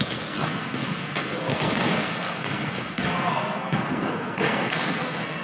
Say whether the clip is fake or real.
fake